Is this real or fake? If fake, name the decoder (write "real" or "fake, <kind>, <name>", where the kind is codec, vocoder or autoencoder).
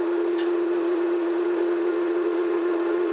fake, vocoder, Vocos